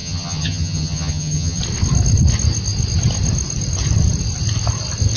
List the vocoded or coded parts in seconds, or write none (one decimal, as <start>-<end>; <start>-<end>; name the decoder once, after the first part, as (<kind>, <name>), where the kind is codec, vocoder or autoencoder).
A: 0.0-1.6 (vocoder, HiFi-GAN)